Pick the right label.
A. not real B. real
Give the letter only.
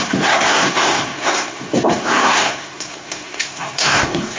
A